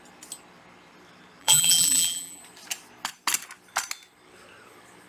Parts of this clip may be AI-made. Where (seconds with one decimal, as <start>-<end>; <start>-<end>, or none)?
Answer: 1.4-2.4